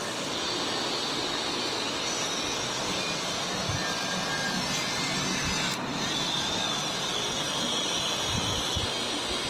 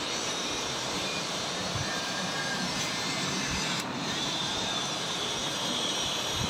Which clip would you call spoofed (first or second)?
second